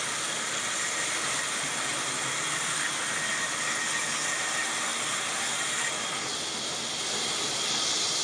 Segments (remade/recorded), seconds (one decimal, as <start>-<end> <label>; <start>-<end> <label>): 0.0-8.2 recorded